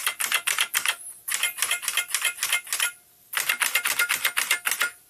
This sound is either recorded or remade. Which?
recorded